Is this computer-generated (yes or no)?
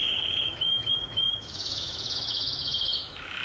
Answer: yes